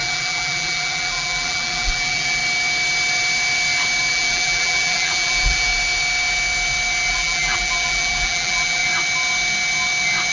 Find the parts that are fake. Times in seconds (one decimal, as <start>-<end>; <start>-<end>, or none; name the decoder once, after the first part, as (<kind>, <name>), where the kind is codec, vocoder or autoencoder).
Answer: 0.0-2.4 (vocoder, BigVGAN v2); 4.1-5.7; 7.1-8.8